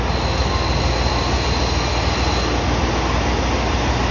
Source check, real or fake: real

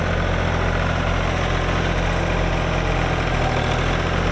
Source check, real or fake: real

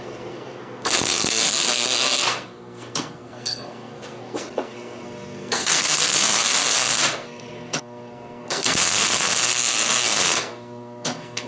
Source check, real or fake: fake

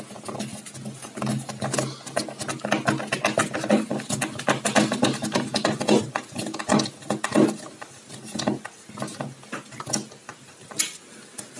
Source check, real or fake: real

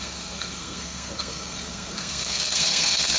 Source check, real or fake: fake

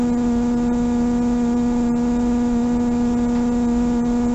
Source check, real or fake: real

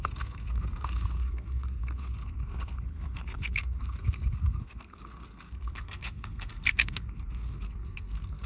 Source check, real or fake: fake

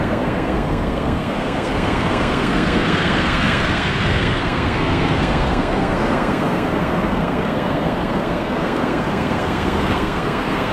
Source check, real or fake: fake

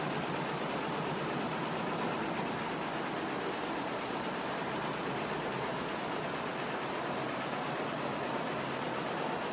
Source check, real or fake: real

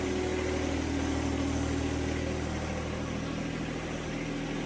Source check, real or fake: real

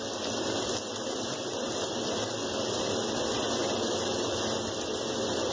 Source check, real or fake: real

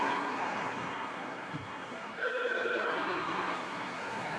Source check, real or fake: fake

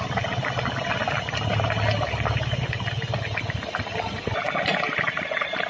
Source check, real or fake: real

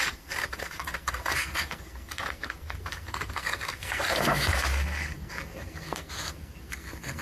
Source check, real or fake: fake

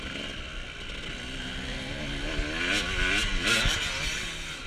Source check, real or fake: real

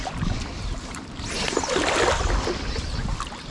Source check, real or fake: real